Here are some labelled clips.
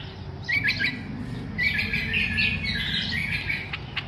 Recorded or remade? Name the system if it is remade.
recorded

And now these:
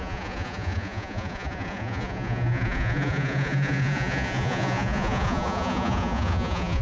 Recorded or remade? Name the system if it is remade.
remade, vocoder, Vocos